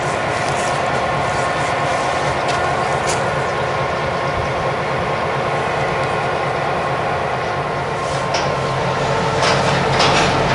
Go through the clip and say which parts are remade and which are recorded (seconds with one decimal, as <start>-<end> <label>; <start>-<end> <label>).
0.0-10.5 recorded

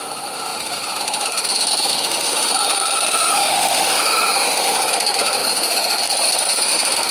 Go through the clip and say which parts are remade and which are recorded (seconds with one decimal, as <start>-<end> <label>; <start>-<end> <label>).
0.0-7.1 remade

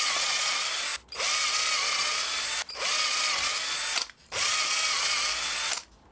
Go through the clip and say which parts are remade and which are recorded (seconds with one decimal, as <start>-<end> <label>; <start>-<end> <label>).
0.0-6.1 recorded

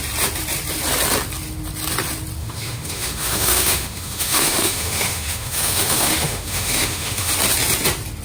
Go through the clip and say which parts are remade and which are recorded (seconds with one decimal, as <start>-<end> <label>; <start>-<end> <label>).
0.0-2.4 recorded; 2.4-7.3 remade; 7.3-8.2 recorded

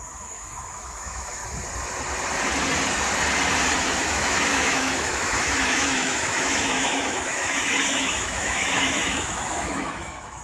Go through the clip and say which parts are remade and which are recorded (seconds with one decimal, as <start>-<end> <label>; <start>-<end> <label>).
0.0-1.4 remade; 1.4-4.1 recorded; 4.1-10.4 remade

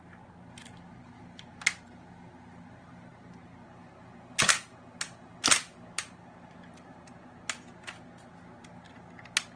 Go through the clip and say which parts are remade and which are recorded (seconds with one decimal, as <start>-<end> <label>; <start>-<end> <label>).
0.0-9.6 recorded

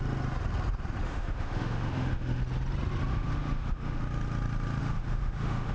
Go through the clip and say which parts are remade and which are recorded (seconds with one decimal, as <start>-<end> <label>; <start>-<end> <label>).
0.0-1.1 recorded; 1.1-2.4 remade; 2.4-3.1 recorded; 3.1-4.0 remade; 4.0-4.8 recorded; 4.8-5.7 remade

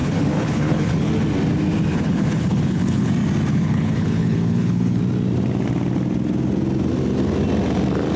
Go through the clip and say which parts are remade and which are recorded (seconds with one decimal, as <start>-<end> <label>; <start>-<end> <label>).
0.0-1.1 remade; 1.1-1.9 recorded; 1.9-3.1 remade; 3.1-3.5 recorded; 3.5-5.0 remade; 5.0-8.2 recorded